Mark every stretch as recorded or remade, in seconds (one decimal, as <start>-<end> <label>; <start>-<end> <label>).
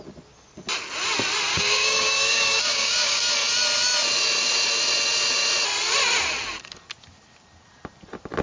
0.0-1.5 recorded; 1.5-3.3 remade; 3.3-8.4 recorded